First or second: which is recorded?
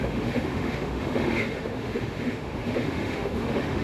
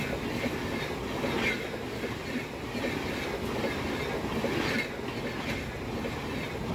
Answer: second